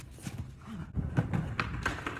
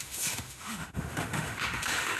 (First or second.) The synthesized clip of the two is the second